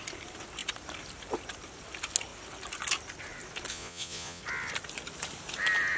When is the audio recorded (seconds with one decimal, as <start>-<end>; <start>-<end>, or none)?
0.0-3.7; 4.4-6.0